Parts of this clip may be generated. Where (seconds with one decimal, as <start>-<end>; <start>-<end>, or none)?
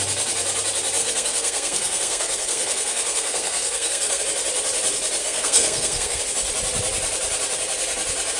1.0-4.2; 5.2-6.2